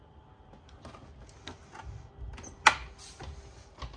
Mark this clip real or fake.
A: real